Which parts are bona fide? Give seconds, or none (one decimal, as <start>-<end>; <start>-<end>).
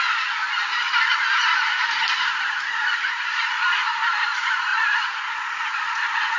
0.4-2.4; 3.8-4.3